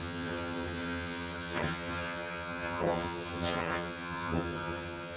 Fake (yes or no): yes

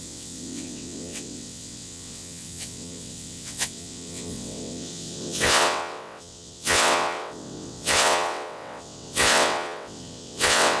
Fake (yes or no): yes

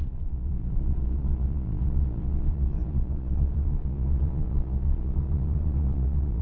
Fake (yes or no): yes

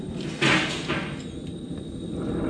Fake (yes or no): no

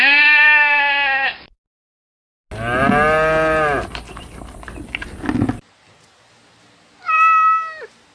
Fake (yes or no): no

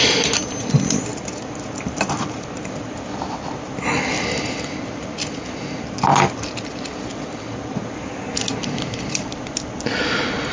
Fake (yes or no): no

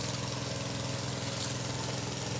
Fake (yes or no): no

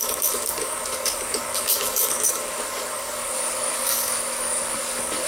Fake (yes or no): yes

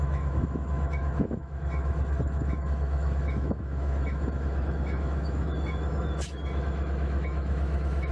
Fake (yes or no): yes